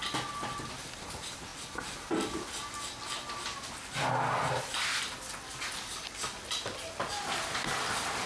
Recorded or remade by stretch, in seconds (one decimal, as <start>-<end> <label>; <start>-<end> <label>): 0.0-8.3 recorded